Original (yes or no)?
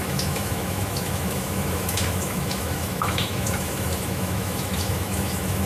no